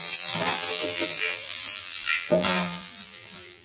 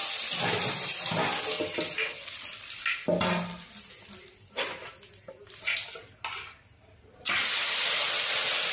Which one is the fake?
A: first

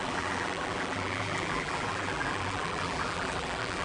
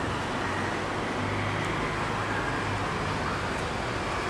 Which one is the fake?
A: first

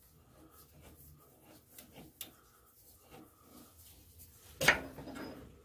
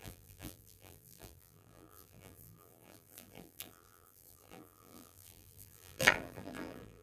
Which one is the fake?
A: second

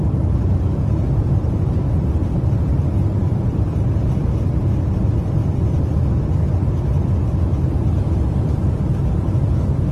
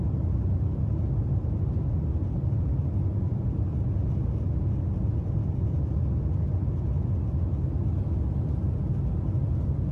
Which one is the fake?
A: first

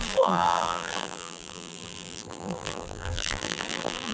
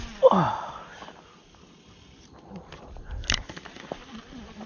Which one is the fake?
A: first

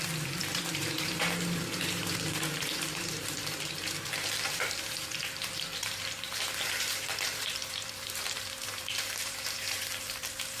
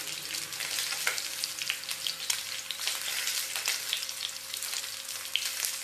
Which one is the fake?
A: first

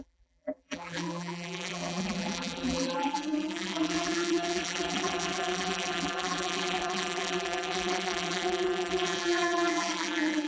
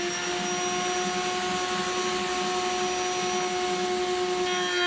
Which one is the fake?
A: first